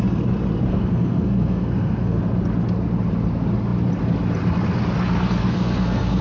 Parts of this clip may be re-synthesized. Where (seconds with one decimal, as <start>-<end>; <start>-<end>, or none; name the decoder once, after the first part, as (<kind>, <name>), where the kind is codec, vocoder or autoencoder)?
0.7-2.2 (codec, SNAC); 5.4-6.2